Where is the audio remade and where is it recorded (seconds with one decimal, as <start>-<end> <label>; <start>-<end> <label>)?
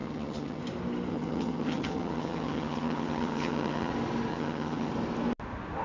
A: 0.0-0.6 remade; 0.6-1.1 recorded; 1.1-3.9 remade; 3.9-4.3 recorded; 4.3-4.9 remade; 4.9-5.8 recorded